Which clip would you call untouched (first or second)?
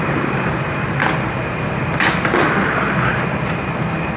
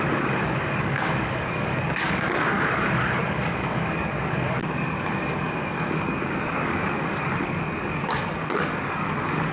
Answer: first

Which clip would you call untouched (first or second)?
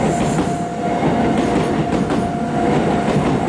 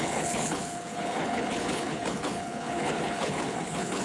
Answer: first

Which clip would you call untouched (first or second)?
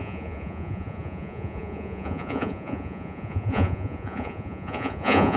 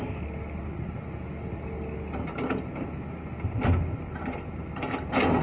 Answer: second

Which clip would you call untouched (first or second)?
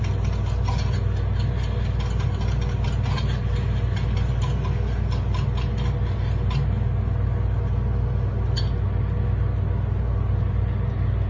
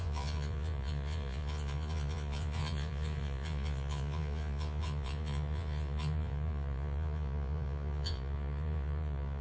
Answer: first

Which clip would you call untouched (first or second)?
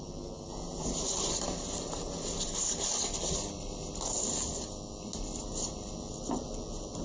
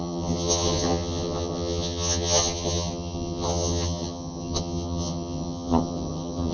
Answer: first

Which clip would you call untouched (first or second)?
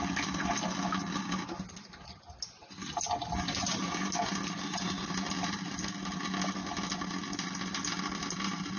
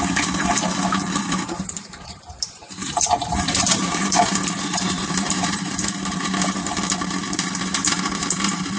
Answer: first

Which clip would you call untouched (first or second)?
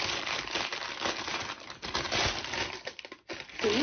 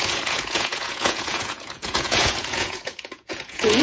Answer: first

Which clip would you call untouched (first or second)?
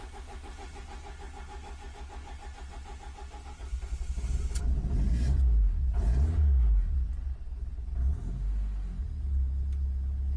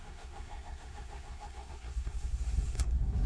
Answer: first